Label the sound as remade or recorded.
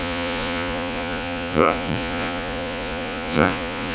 remade